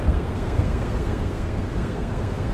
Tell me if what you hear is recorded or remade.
remade